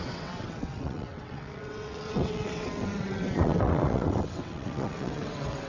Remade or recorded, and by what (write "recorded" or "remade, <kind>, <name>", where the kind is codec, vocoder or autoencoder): remade, vocoder, WaveNeXt